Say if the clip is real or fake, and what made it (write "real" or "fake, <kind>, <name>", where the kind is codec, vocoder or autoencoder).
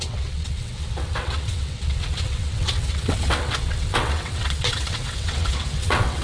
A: fake, vocoder, WaveNeXt